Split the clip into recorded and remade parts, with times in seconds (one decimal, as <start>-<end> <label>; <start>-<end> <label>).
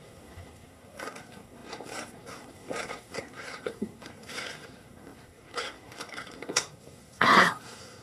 0.0-8.0 remade